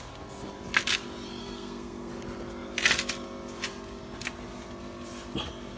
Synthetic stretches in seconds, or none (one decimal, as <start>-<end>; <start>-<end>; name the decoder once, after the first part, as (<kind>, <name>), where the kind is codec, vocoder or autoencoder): 1.4-2.1 (codec, SNAC)